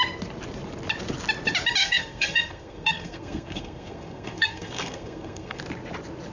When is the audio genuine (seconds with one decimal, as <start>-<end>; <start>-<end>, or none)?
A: 0.0-1.8; 5.6-6.3